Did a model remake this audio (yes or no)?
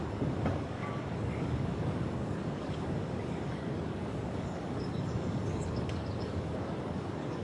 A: yes